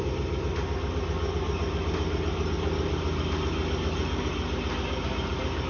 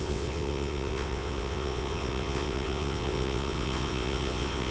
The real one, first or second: first